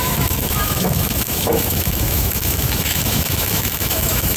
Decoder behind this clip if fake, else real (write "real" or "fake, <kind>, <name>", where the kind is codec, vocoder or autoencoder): fake, autoencoder, DAC-VAE